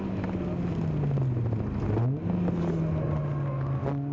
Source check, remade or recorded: recorded